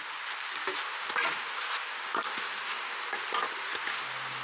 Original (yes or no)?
yes